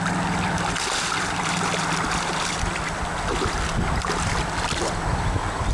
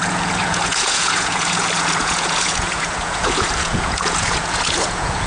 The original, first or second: first